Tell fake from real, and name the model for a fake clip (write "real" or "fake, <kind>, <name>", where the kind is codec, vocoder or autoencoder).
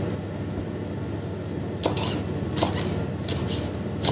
real